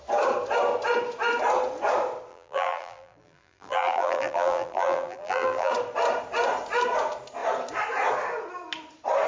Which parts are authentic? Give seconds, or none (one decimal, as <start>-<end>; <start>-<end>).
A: 0.0-2.3; 5.7-9.3